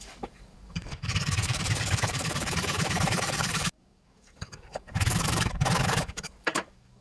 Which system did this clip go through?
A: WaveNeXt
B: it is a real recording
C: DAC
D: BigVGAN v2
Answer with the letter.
C